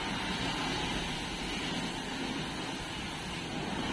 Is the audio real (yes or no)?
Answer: yes